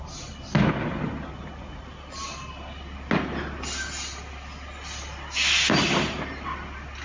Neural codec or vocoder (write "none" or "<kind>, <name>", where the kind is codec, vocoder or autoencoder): none